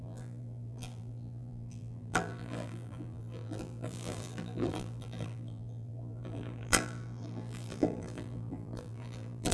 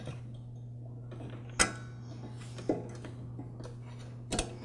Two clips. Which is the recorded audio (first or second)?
second